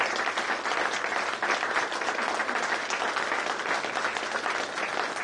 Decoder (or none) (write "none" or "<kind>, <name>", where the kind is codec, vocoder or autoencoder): none